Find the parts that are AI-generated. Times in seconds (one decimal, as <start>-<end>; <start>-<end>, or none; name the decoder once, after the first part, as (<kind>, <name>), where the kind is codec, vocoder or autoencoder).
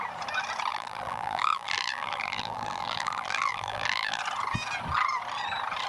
0.7-4.2 (vocoder, BigVGAN v2)